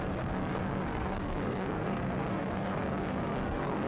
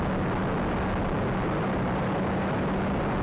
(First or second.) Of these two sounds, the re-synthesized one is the first